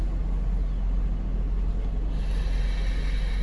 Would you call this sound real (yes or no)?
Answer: yes